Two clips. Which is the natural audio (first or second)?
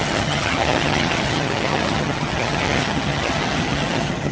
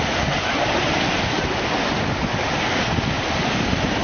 second